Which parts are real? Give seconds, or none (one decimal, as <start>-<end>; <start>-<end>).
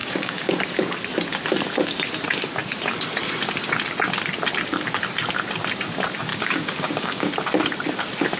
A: 0.6-6.3; 7.3-8.4